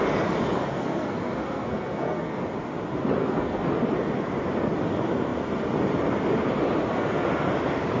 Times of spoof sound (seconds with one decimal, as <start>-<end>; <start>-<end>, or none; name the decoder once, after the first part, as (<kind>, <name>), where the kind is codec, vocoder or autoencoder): 0.7-2.4 (codec, SNAC); 3.2-3.7